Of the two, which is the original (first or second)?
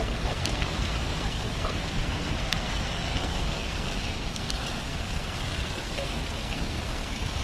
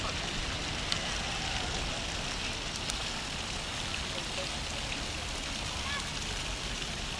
second